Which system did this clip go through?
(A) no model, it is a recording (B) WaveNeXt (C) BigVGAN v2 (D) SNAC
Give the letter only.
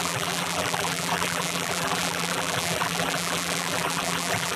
C